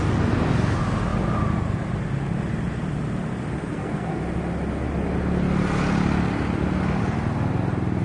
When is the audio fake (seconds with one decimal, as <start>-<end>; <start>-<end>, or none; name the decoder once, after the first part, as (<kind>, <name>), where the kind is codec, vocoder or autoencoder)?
3.7-4.2 (codec, SNAC)

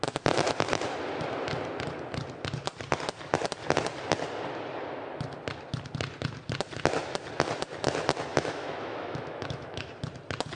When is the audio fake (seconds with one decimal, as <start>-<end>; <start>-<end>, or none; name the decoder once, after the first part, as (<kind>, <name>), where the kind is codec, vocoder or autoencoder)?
8.3-9.9 (autoencoder, DAC-VAE)

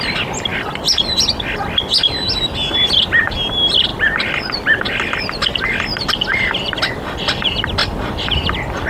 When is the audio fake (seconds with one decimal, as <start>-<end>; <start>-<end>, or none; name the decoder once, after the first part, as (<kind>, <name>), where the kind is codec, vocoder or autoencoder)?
none

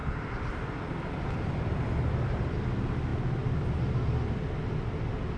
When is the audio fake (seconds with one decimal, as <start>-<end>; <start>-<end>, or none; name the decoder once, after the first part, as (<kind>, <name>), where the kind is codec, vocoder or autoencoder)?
none